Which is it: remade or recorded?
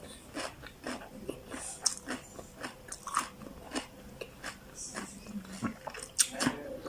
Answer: recorded